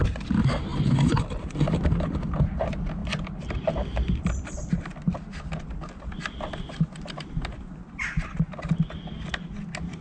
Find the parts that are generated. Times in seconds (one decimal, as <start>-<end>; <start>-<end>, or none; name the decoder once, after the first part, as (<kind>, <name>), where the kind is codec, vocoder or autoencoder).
0.0-4.9 (vocoder, BigVGAN v2)